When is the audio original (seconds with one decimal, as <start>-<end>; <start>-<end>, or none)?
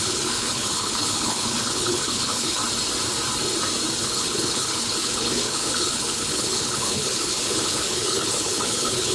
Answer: 2.6-4.0